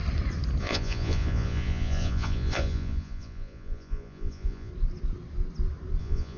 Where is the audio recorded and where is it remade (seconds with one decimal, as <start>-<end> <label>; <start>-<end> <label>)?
0.0-0.6 recorded; 0.6-4.7 remade; 4.7-6.0 recorded; 6.0-6.4 remade